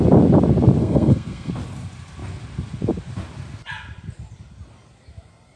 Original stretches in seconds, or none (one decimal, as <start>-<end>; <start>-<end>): 0.0-0.8; 1.5-5.6